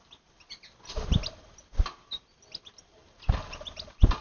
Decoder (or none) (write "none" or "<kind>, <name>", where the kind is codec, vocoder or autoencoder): none